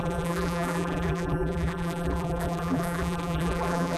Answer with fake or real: fake